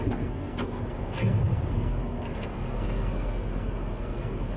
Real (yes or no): no